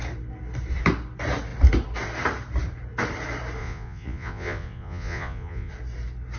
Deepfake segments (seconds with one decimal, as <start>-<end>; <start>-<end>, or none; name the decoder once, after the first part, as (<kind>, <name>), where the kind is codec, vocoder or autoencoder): 3.6-5.7 (vocoder, Vocos)